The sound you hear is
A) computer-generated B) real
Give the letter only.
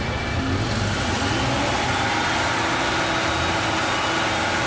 B